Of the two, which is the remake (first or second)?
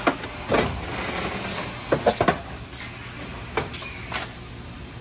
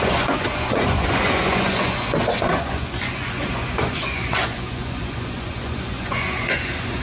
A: second